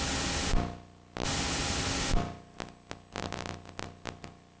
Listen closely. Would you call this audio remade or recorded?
recorded